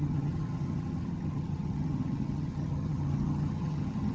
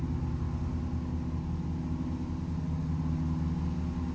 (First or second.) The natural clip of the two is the second